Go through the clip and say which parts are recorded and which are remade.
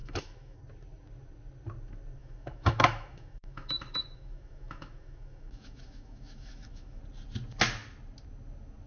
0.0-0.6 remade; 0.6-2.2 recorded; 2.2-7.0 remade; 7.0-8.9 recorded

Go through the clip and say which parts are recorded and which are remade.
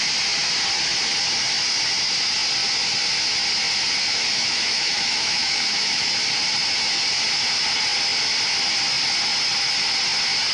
0.0-4.1 recorded; 4.1-6.1 remade; 6.1-10.5 recorded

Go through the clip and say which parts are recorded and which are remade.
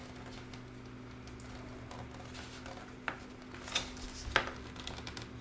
0.0-5.4 recorded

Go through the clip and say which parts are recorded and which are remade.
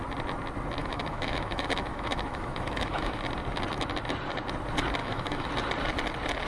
0.0-0.8 recorded; 0.8-3.2 remade; 3.2-5.0 recorded; 5.0-5.5 remade; 5.5-6.5 recorded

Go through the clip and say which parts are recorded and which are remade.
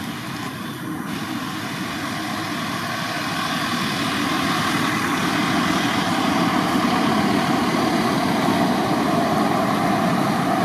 0.0-10.6 recorded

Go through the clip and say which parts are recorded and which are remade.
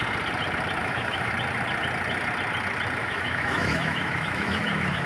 0.0-0.8 recorded; 0.8-1.3 remade; 1.3-3.0 recorded; 3.0-5.1 remade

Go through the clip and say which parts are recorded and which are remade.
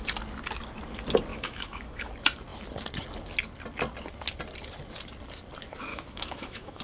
0.0-1.3 recorded; 1.3-2.1 remade; 2.1-5.9 recorded; 5.9-6.8 remade